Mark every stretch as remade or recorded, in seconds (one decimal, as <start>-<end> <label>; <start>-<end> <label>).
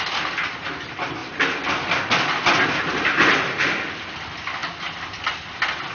0.0-1.2 recorded; 1.2-2.0 remade; 2.0-4.6 recorded; 4.6-5.9 remade